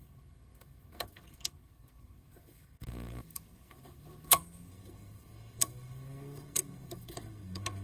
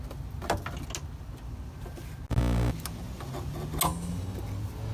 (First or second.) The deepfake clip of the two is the first